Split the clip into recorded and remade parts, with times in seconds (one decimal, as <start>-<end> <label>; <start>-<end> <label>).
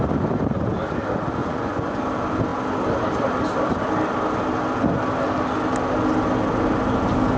0.0-1.4 recorded; 1.4-2.0 remade; 2.0-7.4 recorded